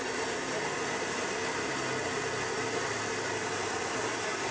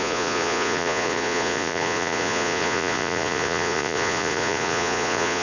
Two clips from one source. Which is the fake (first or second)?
second